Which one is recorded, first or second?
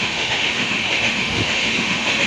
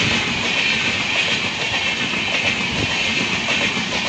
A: second